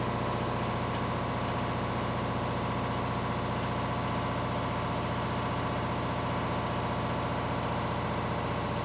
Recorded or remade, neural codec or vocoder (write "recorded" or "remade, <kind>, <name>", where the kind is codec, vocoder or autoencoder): recorded